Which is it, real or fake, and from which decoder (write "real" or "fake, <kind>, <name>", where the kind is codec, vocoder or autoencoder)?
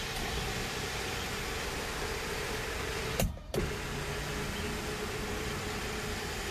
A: fake, vocoder, BigVGAN v2